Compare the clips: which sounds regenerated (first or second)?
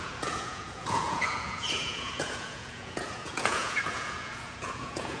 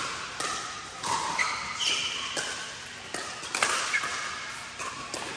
first